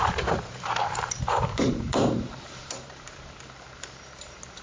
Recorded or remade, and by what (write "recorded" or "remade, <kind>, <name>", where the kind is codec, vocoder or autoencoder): remade, vocoder, BigVGAN v2